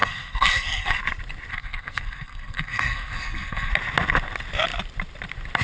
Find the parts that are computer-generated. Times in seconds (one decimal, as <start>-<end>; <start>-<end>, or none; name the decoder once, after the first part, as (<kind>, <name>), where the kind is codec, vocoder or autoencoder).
0.0-1.0 (codec, SNAC); 1.5-3.7